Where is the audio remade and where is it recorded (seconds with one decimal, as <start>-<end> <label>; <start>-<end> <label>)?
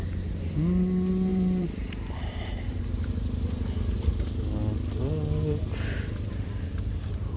0.0-1.3 recorded; 1.3-2.8 remade; 2.8-7.4 recorded